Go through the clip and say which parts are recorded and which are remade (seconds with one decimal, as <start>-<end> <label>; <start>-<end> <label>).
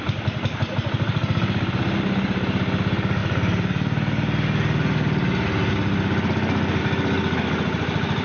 0.0-8.2 recorded